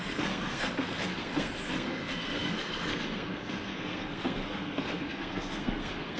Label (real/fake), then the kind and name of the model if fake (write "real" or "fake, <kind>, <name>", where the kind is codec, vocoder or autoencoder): fake, codec, SNAC